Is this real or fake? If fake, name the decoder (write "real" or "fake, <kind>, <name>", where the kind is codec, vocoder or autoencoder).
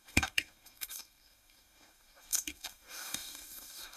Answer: fake, codec, DAC